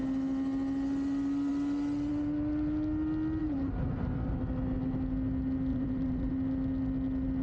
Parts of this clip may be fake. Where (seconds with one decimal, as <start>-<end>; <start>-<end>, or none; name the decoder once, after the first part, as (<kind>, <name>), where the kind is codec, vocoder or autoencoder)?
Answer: 3.4-3.9 (vocoder, BigVGAN v2); 5.7-6.3